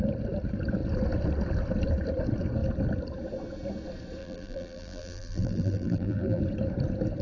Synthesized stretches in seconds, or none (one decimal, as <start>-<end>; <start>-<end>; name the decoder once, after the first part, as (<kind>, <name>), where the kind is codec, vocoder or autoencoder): 4.2-6.4 (vocoder, BigVGAN v2)